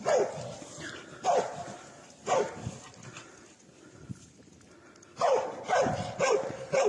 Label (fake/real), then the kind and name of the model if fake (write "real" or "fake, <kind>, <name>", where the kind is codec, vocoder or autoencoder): real